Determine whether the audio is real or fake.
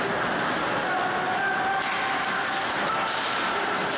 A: real